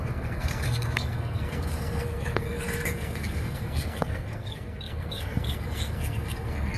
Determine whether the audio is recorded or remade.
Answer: remade